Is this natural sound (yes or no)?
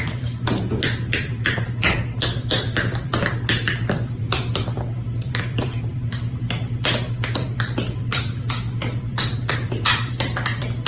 no